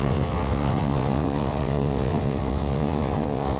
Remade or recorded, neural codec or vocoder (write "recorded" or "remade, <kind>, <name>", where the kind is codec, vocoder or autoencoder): remade, vocoder, WaveNeXt